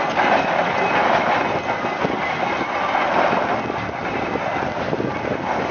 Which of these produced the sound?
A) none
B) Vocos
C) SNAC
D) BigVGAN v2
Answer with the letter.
A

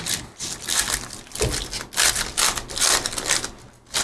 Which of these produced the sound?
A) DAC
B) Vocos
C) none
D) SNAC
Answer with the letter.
C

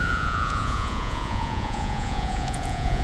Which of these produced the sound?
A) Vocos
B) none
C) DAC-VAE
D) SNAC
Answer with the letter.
A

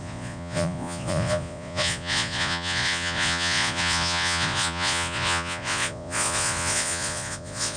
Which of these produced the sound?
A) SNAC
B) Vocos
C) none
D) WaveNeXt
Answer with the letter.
B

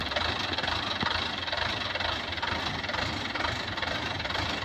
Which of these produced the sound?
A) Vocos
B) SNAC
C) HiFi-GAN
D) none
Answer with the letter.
D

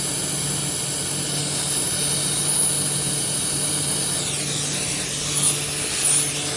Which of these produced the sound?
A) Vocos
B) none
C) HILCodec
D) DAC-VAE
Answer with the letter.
B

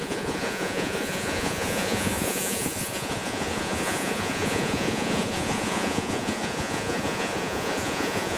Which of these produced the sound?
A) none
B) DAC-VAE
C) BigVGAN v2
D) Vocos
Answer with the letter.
D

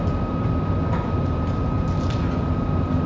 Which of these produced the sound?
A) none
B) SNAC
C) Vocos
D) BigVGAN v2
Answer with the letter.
A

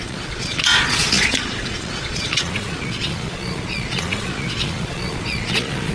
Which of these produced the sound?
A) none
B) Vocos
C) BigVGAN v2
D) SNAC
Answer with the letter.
B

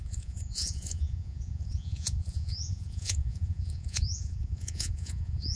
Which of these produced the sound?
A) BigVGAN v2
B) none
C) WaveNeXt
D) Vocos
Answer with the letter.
D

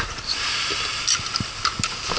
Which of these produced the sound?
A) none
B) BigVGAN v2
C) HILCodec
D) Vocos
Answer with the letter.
A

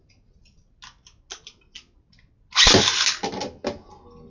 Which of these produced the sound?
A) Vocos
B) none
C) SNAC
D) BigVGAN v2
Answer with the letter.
B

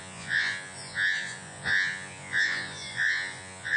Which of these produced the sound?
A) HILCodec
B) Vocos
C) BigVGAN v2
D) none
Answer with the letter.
B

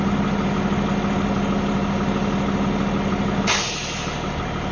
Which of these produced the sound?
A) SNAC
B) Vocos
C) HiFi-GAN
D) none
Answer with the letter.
D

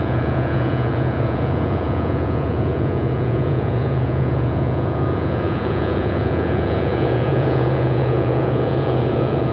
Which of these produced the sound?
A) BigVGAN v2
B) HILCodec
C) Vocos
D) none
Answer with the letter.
C